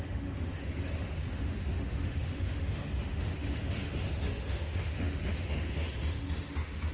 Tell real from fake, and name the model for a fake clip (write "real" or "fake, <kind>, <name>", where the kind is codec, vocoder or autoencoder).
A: fake, autoencoder, DAC-VAE